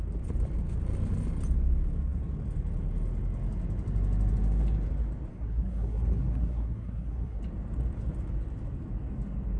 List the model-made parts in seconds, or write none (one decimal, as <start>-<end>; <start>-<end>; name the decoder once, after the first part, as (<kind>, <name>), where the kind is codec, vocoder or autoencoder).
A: 5.3-7.4 (codec, SNAC)